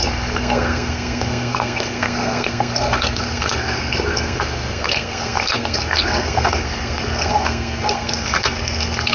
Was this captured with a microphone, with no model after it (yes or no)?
no